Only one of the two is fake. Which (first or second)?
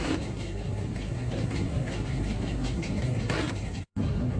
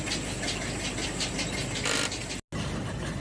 first